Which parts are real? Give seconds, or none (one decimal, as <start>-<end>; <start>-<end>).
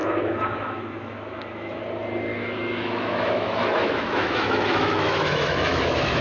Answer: 1.8-2.3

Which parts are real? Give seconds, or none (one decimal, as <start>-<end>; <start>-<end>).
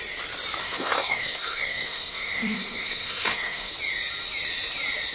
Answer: 0.0-0.6; 3.7-5.1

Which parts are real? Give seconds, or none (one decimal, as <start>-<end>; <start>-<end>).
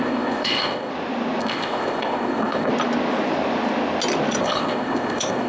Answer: 0.9-1.4; 2.7-4.4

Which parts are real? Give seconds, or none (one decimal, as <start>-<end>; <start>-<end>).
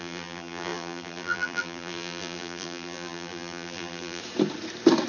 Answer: 4.2-5.1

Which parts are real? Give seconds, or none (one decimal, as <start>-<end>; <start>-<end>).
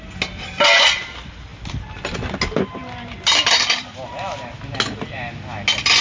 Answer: 0.0-6.0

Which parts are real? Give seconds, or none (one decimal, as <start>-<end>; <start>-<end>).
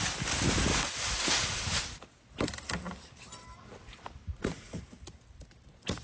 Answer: 0.0-0.7; 1.8-4.2; 4.8-6.0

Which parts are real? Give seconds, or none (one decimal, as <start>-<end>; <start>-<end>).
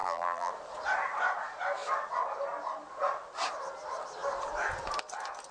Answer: 0.5-5.5